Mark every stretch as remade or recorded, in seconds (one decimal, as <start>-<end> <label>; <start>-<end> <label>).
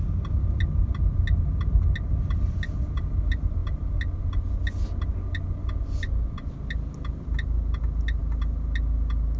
0.0-9.4 recorded